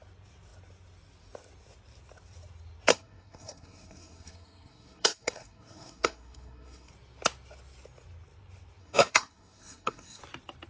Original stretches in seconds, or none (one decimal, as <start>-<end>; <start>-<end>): 0.0-2.9; 6.9-8.8; 10.2-10.7